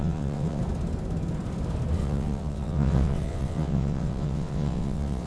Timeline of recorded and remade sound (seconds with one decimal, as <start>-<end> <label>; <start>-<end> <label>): 0.0-0.6 remade; 0.6-2.0 recorded; 2.0-5.3 remade